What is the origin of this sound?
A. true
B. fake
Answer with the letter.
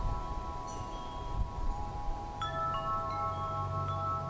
B